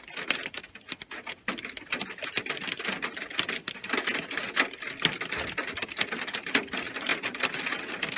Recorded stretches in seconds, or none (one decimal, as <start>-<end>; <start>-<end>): 0.0-8.2